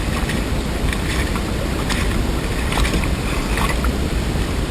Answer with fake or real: real